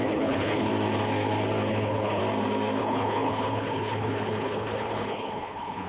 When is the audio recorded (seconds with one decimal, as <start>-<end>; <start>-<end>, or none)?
0.7-1.7; 2.2-2.8